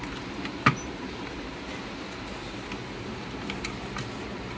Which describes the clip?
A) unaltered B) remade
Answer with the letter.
A